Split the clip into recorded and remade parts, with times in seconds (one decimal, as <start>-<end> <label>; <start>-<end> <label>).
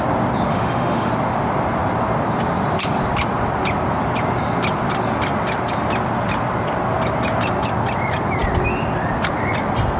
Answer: 0.0-0.5 recorded; 0.5-1.1 remade; 1.1-10.0 recorded